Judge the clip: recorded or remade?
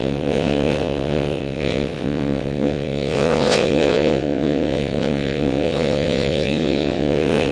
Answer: remade